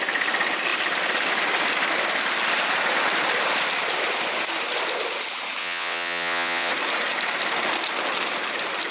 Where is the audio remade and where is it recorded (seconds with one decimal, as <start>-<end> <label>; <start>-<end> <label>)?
0.0-5.6 recorded; 5.6-6.7 remade; 6.7-8.9 recorded